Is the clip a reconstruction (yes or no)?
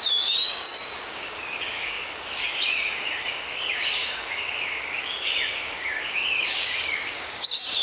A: yes